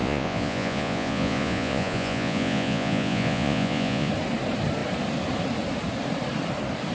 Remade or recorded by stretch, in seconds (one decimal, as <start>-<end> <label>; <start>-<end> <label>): 0.0-4.1 remade; 4.1-6.9 recorded